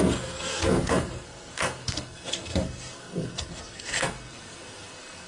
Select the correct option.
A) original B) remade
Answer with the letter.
B